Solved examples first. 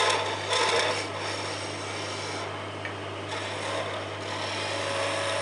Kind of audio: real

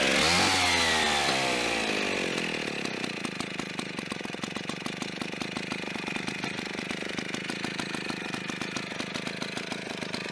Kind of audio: real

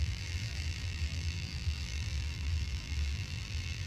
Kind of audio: fake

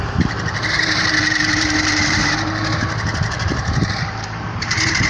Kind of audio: fake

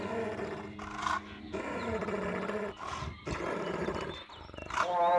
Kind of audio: real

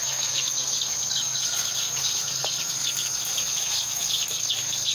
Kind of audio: fake